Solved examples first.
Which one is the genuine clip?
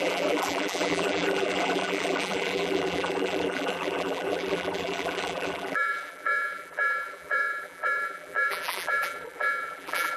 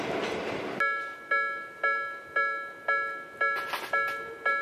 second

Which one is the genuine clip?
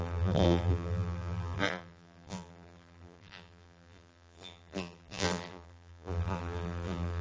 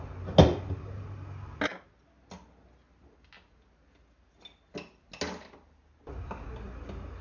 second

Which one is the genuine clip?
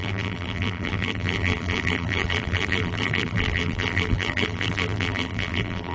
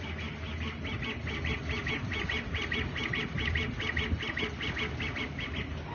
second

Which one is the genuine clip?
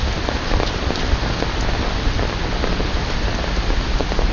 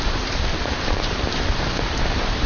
first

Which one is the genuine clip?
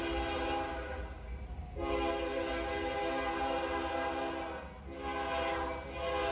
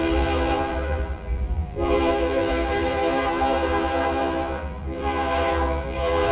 first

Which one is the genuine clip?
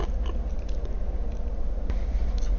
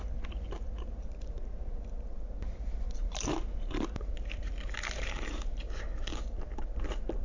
first